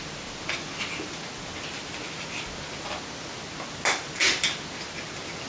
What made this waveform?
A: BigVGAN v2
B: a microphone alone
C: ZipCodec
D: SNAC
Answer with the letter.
B